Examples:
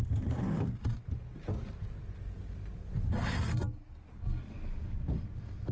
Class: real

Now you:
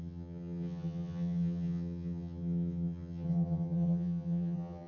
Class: fake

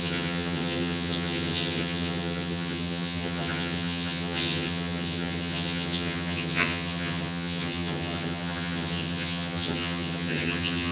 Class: fake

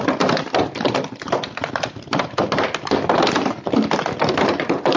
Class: real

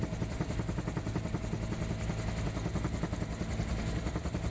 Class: real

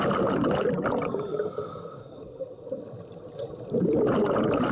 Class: real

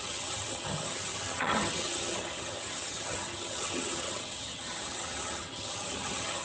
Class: fake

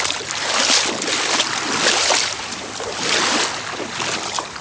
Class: real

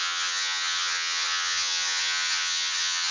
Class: fake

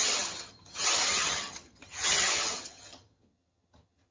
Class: fake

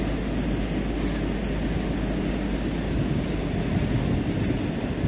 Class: real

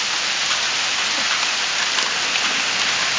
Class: real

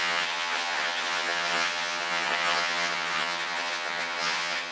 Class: fake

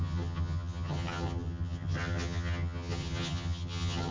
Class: fake